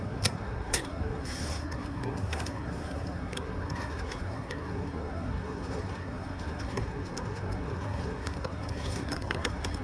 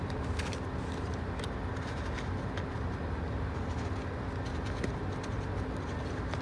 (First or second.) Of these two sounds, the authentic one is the second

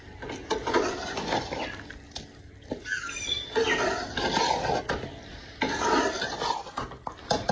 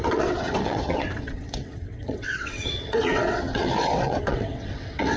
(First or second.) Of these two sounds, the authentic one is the first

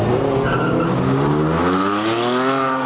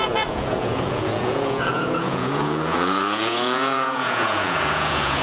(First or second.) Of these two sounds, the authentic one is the first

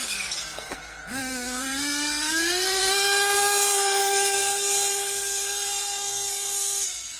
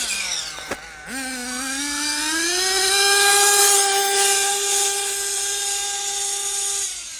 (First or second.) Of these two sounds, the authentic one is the second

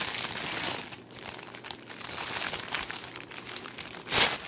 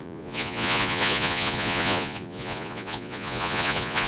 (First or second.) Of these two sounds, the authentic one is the first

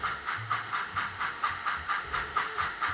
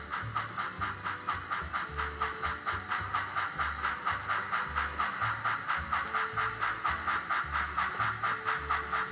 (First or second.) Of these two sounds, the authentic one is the second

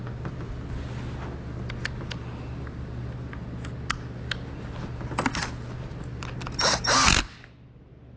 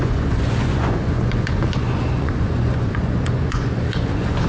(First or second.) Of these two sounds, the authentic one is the first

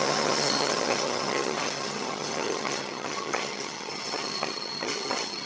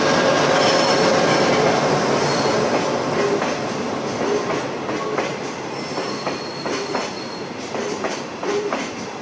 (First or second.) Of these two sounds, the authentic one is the second